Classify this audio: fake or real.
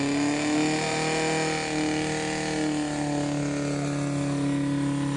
real